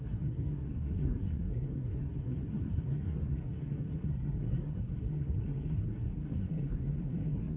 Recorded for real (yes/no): no